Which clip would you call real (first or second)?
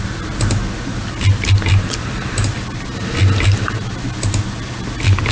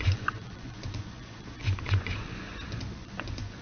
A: first